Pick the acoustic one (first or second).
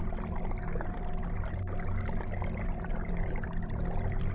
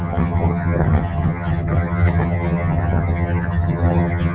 first